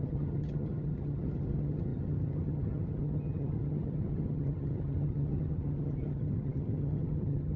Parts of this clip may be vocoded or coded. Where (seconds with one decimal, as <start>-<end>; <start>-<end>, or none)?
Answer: 0.0-7.6